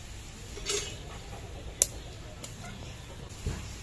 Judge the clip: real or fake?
real